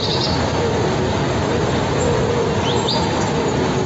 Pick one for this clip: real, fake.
real